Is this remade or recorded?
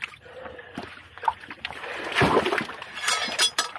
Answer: recorded